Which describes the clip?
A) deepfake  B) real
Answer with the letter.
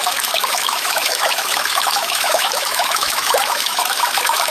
A